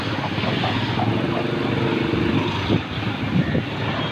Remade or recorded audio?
recorded